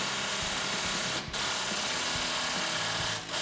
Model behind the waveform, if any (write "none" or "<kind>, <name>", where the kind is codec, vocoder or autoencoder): none